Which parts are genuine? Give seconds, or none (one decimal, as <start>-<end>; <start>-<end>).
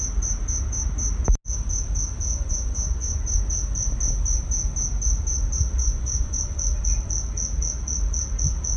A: 0.0-2.3; 3.4-5.8; 6.4-8.8